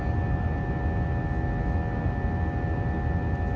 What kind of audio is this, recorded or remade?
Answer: recorded